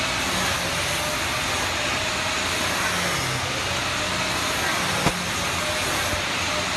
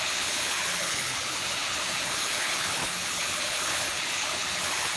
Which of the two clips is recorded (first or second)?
first